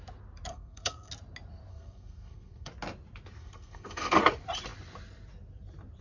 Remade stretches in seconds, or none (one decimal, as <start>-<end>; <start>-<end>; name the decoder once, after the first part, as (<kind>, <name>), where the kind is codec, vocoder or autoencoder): 0.5-1.1 (codec, SNAC); 1.7-2.7; 3.4-4.2